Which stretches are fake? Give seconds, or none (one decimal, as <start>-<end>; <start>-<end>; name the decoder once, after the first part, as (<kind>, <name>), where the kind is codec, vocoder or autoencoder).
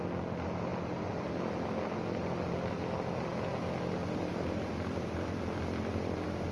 none